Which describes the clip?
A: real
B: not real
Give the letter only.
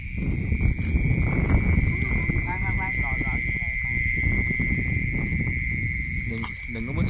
A